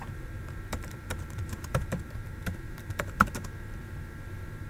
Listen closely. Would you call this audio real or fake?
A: fake